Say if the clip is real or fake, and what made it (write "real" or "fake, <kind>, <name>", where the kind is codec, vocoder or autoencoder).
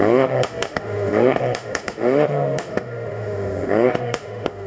fake, autoencoder, DAC-VAE